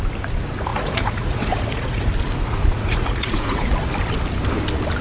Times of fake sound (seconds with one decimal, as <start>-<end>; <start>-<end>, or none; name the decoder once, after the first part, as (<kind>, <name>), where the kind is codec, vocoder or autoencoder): 0.7-2.1 (vocoder, Vocos); 2.7-3.7